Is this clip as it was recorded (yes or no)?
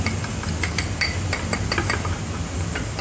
yes